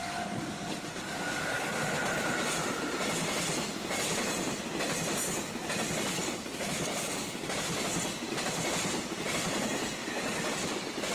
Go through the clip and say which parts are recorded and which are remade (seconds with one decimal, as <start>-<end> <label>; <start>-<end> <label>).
0.0-1.8 remade; 1.8-6.1 recorded; 6.1-7.8 remade; 7.8-10.0 recorded; 10.0-10.7 remade; 10.7-11.1 recorded